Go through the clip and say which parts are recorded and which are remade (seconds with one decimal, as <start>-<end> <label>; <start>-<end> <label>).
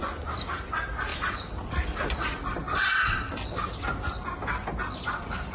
0.0-1.1 recorded; 1.1-3.5 remade; 3.5-5.5 recorded